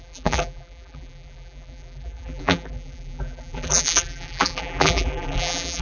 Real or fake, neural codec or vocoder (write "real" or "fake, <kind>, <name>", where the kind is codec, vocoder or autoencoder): fake, vocoder, BigVGAN v2